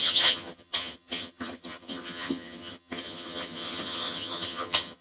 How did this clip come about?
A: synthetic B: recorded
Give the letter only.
A